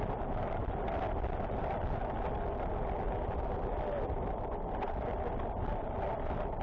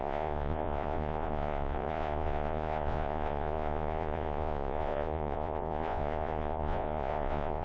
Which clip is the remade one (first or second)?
second